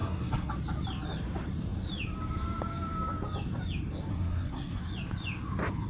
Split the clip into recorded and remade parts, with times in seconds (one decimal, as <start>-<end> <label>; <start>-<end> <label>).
0.0-0.5 remade; 0.5-4.1 recorded; 4.1-4.8 remade; 4.8-5.9 recorded